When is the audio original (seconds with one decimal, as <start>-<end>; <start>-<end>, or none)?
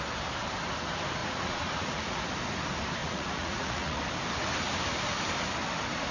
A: 0.0-1.2; 2.2-3.0; 4.0-6.1